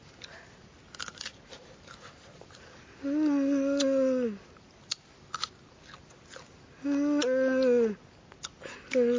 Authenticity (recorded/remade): recorded